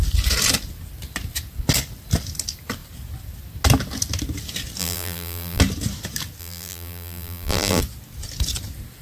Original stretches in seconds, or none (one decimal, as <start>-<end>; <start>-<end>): 0.0-4.8; 5.6-6.4; 7.8-9.0

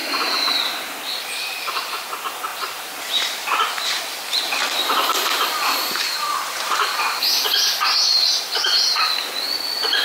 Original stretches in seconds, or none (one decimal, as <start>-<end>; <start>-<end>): 0.0-2.5; 4.0-4.6; 9.0-10.0

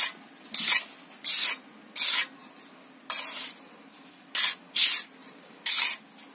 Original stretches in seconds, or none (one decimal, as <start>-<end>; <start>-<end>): 0.0-2.4; 3.6-5.2; 5.7-6.3

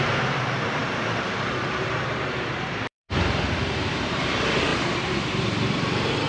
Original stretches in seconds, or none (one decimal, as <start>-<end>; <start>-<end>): none

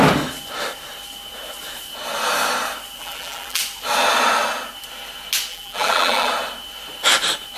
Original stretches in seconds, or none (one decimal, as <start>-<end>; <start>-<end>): 0.0-3.0; 3.6-5.5; 6.3-7.6

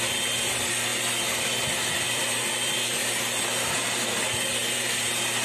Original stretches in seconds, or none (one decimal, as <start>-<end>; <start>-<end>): 0.0-5.4

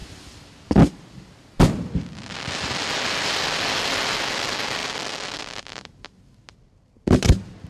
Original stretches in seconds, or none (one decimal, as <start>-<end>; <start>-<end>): 0.0-7.7

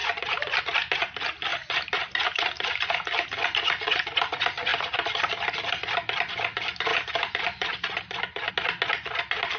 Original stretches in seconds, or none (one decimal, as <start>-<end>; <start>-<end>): 0.6-1.5; 2.4-6.9; 8.5-9.6